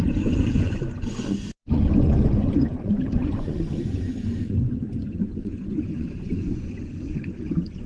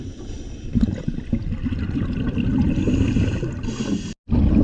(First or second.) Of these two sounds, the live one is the second